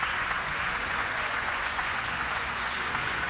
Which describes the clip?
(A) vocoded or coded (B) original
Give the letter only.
A